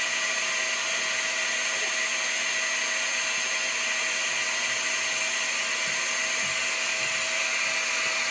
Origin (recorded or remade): recorded